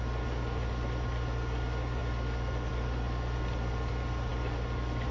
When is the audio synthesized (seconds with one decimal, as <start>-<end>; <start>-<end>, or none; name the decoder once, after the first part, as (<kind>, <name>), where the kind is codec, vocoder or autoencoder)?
none